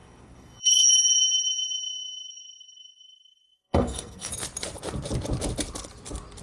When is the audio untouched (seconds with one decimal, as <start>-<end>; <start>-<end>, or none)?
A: 0.9-2.3; 4.3-6.4